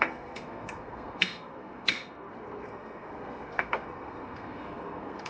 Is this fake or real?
fake